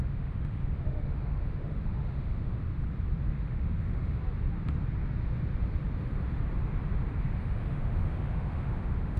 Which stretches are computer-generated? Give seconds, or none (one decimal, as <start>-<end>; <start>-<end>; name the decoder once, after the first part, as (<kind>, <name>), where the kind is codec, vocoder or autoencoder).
0.0-2.7 (autoencoder, DAC-VAE); 3.3-4.2; 7.4-9.2